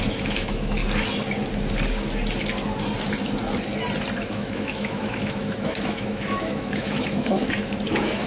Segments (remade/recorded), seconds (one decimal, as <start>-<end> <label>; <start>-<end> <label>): 0.0-0.8 remade; 0.8-4.3 recorded; 4.3-8.3 remade